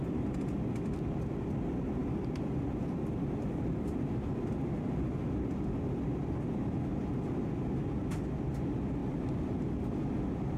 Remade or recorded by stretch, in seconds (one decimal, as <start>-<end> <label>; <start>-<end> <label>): 0.0-2.0 recorded; 2.0-6.2 remade; 6.2-10.6 recorded